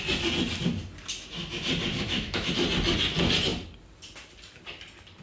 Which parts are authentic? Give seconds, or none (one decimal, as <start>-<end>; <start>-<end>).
0.0-1.9; 2.5-5.2